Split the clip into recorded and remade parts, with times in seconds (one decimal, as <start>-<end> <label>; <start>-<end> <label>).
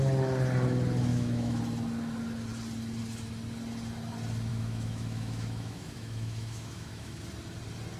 0.0-1.1 recorded; 1.1-1.6 remade; 1.6-4.5 recorded; 4.5-7.2 remade; 7.2-8.0 recorded